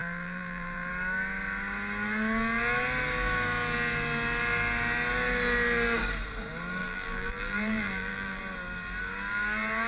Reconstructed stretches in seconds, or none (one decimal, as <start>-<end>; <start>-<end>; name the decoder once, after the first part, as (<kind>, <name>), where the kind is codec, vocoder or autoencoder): 0.0-0.9 (vocoder, BigVGAN v2); 6.8-8.4